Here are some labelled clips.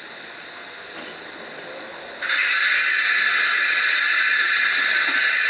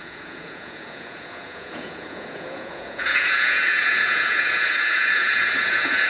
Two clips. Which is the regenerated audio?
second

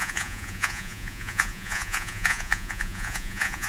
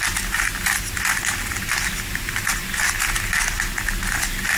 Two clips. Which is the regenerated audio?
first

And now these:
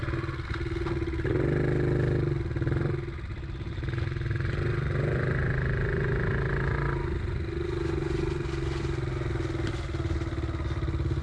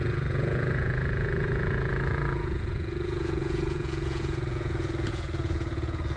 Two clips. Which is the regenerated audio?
second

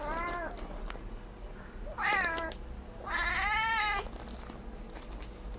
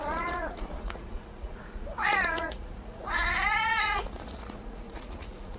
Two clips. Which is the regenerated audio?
second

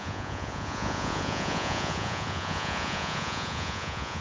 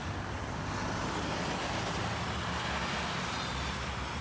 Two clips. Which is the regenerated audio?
first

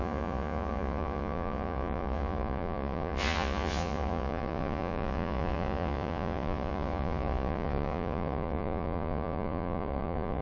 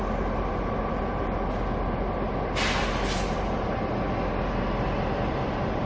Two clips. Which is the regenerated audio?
first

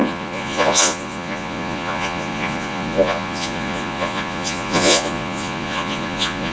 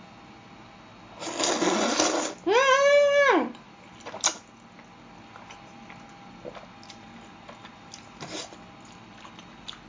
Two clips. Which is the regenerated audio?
first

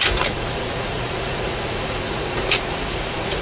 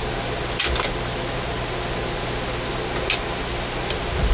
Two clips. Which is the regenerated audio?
first